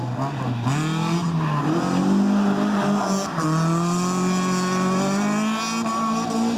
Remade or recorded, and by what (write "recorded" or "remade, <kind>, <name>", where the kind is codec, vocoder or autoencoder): recorded